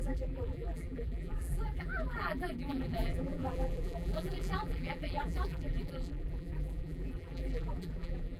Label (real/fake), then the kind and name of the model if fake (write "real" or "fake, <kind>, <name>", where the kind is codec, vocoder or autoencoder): fake, vocoder, BigVGAN v2